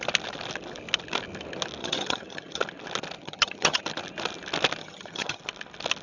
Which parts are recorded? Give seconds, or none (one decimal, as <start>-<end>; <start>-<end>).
0.0-1.8; 2.6-3.2; 3.8-4.8; 5.4-6.0